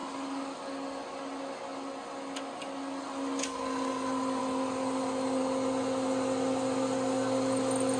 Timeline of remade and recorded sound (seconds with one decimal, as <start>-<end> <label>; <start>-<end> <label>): 0.0-8.0 recorded